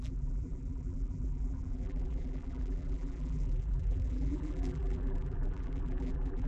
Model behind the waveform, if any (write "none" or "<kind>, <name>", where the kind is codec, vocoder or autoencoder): vocoder, BigVGAN v2